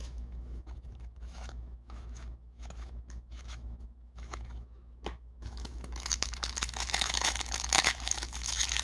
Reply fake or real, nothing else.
fake